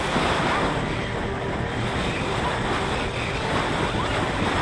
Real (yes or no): yes